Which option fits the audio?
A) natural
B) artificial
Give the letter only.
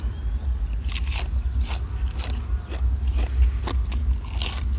A